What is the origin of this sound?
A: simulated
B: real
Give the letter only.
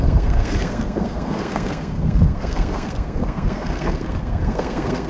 A